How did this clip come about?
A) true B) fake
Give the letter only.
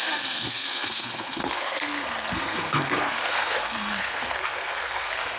B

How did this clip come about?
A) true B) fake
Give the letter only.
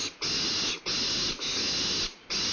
A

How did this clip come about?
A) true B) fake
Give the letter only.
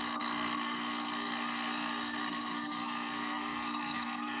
B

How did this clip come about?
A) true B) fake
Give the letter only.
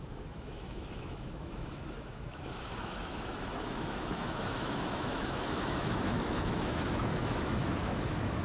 B